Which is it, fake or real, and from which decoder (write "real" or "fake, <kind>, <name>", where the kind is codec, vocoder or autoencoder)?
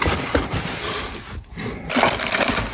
real